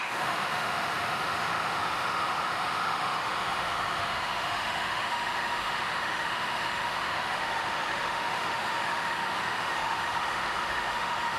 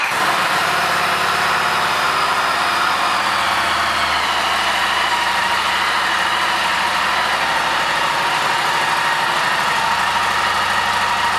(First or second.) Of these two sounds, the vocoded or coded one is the first